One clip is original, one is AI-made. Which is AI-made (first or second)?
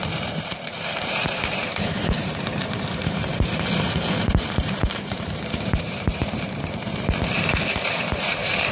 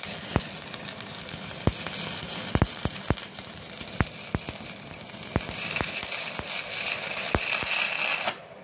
first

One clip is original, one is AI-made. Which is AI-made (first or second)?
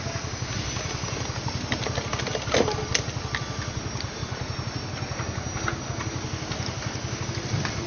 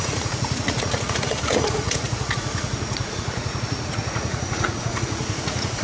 second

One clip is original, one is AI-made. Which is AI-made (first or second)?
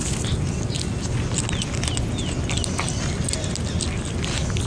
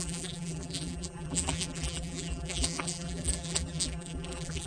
second